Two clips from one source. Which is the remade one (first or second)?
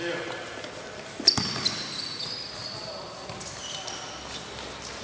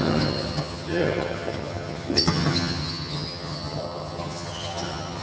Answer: second